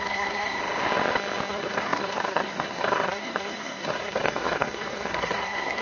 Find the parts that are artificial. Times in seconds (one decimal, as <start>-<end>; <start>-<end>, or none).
0.0-0.6; 1.5-5.8